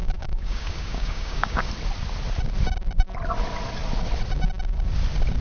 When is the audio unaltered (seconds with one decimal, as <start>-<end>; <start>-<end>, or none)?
1.7-5.4

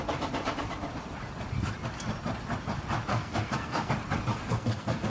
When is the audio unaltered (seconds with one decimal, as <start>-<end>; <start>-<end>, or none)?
0.0-3.1; 3.9-4.3

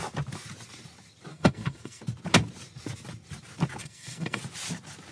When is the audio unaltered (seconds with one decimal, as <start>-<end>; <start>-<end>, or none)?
0.0-1.3; 2.0-3.8; 4.4-5.1

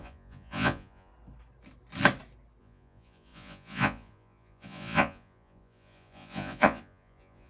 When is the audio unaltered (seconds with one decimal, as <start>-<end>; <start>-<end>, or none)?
1.1-2.6